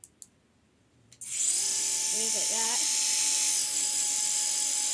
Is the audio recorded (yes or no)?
yes